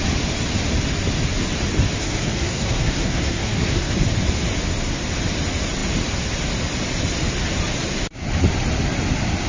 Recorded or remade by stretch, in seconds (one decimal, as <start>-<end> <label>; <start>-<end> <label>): 0.0-2.0 recorded; 2.0-3.9 remade; 3.9-9.5 recorded

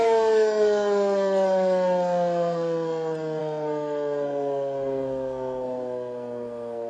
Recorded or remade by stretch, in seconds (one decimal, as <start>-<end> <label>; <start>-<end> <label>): 0.0-6.9 remade

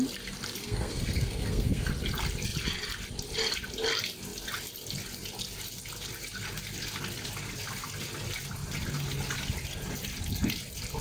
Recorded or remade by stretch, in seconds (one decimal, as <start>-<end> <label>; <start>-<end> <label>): 0.0-0.6 recorded; 0.6-1.9 remade; 1.9-11.0 recorded

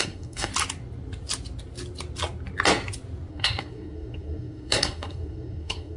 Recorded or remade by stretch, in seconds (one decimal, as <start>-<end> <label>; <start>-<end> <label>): 0.0-0.5 remade; 0.5-3.3 recorded; 3.3-6.0 remade

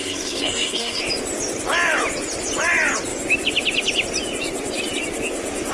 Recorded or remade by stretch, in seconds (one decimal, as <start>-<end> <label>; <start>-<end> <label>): 0.0-1.0 remade; 1.0-5.7 recorded